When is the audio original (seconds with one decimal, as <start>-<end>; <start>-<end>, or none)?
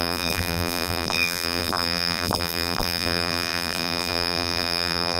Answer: none